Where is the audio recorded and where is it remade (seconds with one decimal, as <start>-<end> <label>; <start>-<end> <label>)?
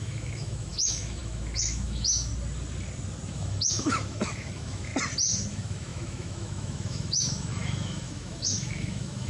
0.0-2.3 remade; 2.3-3.3 recorded; 3.3-4.9 remade; 4.9-5.5 recorded; 5.5-9.3 remade